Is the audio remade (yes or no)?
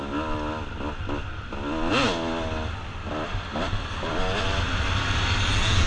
no